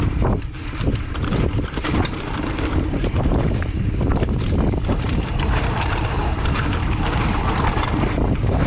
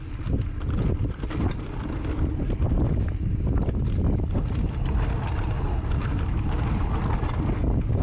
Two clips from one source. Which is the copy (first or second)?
first